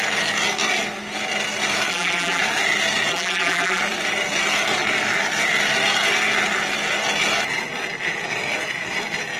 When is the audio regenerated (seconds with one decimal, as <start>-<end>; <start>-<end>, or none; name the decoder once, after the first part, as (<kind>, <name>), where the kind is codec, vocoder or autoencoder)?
1.9-2.4 (vocoder, BigVGAN v2); 3.1-3.8